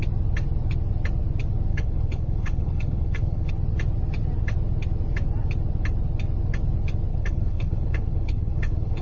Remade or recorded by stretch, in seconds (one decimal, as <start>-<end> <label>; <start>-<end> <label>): 0.0-1.7 recorded; 1.7-3.5 remade; 3.5-7.1 recorded; 7.1-9.0 remade